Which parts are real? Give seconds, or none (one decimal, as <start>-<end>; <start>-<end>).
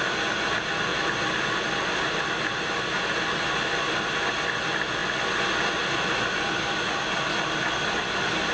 0.0-8.5